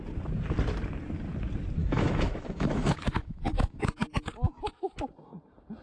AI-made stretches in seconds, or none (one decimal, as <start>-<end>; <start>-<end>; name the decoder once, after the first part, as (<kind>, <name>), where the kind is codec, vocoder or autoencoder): 1.8-4.6 (autoencoder, DAC-VAE)